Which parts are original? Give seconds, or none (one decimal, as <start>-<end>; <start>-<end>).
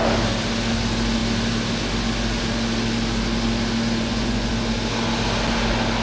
0.0-4.0; 4.5-6.0